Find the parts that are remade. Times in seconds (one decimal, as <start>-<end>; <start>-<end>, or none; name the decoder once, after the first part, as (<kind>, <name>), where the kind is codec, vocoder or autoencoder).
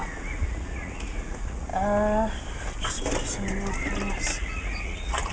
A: 0.0-1.7 (vocoder, Vocos); 4.3-5.3